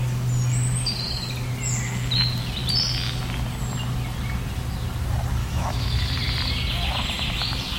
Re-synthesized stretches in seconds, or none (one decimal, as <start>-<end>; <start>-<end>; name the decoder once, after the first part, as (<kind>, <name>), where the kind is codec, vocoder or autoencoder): 5.4-6.1 (autoencoder, DAC-VAE)